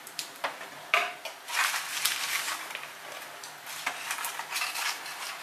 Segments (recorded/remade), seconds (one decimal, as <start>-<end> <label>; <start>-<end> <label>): 0.0-1.0 remade; 1.0-4.2 recorded; 4.2-5.4 remade